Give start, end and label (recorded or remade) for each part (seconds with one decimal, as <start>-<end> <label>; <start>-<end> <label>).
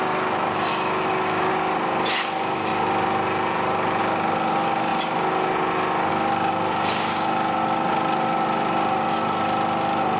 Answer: 0.0-0.7 recorded; 0.7-1.5 remade; 1.5-10.2 recorded